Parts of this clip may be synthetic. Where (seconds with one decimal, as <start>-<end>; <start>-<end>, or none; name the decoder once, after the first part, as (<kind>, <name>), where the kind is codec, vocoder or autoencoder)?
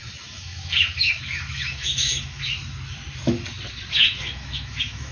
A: 0.0-2.4 (autoencoder, DAC-VAE); 3.9-5.1